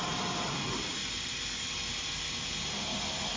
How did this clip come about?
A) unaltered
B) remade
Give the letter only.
A